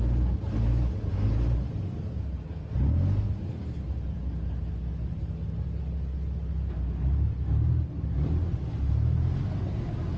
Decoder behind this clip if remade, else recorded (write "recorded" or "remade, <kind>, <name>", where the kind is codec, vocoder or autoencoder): recorded